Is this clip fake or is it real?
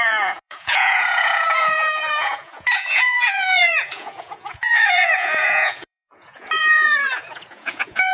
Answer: fake